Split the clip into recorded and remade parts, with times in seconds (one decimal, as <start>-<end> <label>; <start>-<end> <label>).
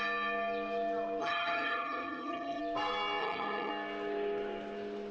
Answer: 0.0-1.2 recorded; 1.2-2.6 remade; 2.6-3.2 recorded; 3.2-3.7 remade; 3.7-5.1 recorded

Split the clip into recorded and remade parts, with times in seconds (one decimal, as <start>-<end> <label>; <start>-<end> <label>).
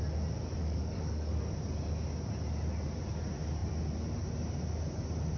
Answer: 0.0-0.6 recorded; 0.6-1.4 remade; 1.4-5.4 recorded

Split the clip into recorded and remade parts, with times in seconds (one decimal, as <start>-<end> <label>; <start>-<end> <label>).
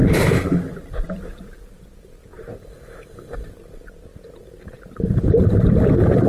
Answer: 0.0-0.7 recorded; 0.7-6.3 remade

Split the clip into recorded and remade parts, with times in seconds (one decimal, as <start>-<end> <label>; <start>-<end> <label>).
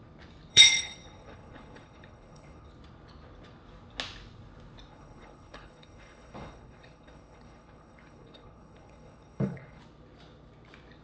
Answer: 0.0-0.5 recorded; 0.5-2.7 remade; 2.7-4.9 recorded; 4.9-9.8 remade; 9.8-11.0 recorded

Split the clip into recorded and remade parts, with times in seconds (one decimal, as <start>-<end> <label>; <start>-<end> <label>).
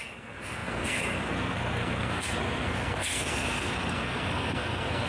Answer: 0.0-5.1 remade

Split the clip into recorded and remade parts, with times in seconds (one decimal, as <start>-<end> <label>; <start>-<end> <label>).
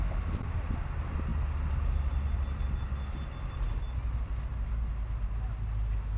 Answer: 0.0-6.2 recorded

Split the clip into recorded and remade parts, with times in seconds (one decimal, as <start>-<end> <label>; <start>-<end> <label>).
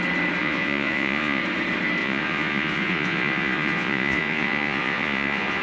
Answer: 0.0-0.4 recorded; 0.4-1.4 remade; 1.4-2.0 recorded; 2.0-5.6 remade